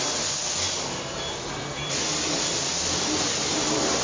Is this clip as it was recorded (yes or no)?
yes